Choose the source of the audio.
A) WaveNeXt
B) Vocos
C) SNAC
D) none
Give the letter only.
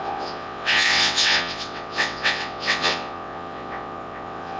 A